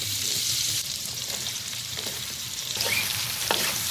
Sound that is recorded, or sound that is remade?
remade